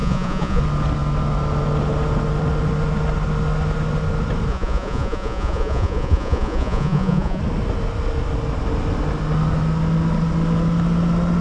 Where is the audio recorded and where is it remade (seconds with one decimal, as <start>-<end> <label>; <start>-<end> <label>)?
0.0-0.6 remade; 0.6-4.5 recorded; 4.5-7.4 remade; 7.4-11.4 recorded